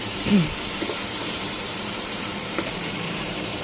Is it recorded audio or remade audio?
remade